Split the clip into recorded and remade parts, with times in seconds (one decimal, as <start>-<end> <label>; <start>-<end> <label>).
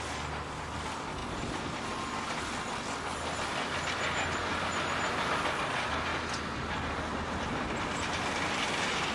0.0-9.1 recorded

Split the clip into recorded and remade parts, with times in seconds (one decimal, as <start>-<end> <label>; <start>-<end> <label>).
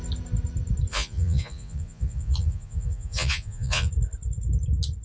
0.0-0.9 recorded; 0.9-3.9 remade; 3.9-5.0 recorded